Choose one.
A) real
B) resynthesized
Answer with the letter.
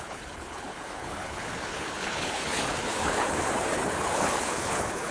B